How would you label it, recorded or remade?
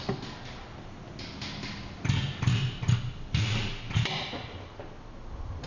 recorded